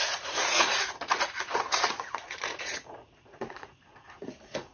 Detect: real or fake fake